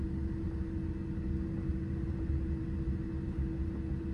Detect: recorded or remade recorded